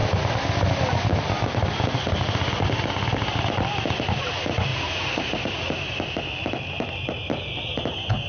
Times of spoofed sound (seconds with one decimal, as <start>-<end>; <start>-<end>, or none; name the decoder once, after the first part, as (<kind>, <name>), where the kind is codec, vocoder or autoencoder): 4.7-5.7 (vocoder, Vocos)